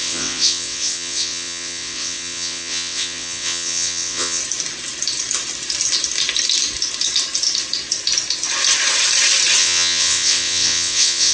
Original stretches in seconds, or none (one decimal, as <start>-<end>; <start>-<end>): 4.4-9.6